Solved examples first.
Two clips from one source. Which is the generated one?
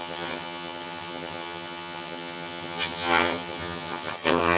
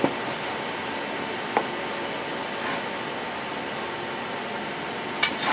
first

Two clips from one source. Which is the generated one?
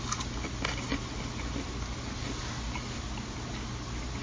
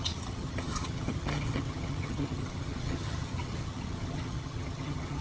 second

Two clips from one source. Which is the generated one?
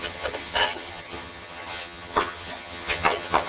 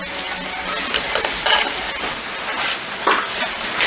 first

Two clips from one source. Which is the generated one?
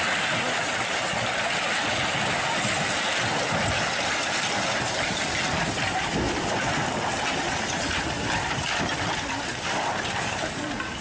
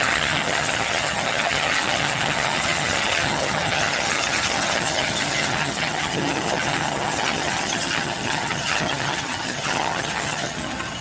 second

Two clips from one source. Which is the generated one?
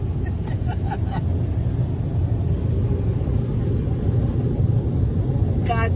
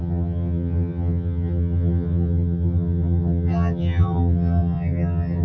second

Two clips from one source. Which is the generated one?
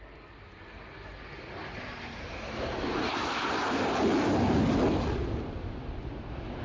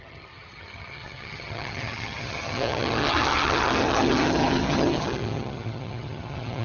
second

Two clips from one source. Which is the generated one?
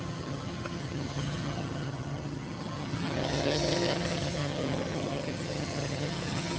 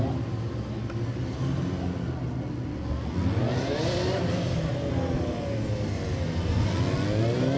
first